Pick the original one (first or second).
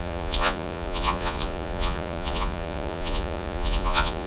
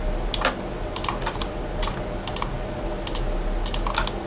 second